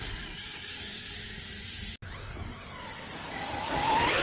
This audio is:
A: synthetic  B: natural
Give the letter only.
B